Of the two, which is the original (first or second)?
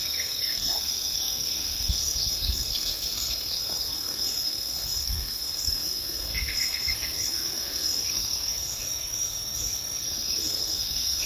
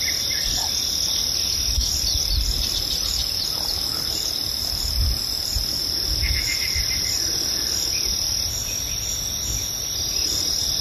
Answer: second